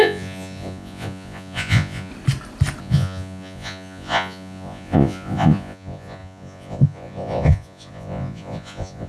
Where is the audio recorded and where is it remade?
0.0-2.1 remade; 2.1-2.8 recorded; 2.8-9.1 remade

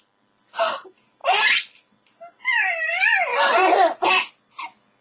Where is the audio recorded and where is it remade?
0.0-1.2 recorded; 1.2-1.9 remade; 1.9-3.3 recorded; 3.3-4.1 remade; 4.1-5.0 recorded